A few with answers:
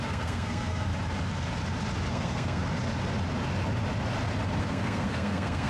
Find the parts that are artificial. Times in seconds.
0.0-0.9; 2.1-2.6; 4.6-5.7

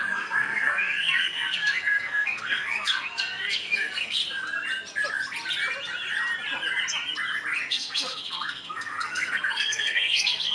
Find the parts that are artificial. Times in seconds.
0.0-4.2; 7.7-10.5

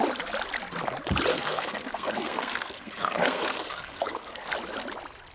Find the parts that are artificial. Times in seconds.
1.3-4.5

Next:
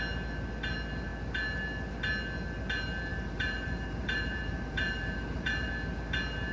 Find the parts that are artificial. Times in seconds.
3.1-5.7